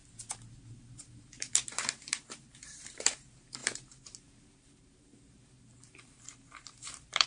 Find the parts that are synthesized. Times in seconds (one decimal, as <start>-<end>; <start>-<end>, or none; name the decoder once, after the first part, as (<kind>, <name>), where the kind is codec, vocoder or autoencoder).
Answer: 0.7-7.3 (vocoder, BigVGAN v2)